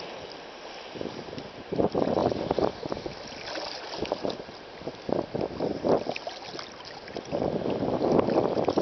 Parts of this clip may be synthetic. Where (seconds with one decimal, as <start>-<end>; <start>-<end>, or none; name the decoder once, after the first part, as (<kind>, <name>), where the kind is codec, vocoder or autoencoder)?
none